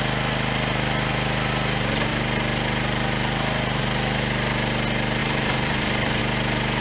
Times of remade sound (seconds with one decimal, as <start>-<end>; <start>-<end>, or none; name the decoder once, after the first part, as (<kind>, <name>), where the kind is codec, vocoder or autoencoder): 5.2-6.2 (vocoder, BigVGAN v2)